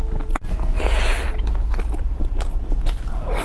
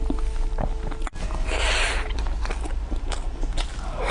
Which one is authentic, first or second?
second